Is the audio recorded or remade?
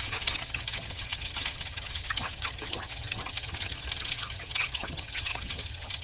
remade